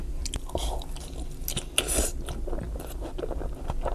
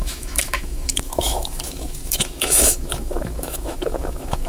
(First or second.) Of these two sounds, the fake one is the second